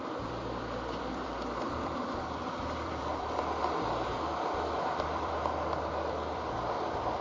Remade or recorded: remade